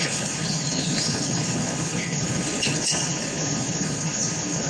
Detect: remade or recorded remade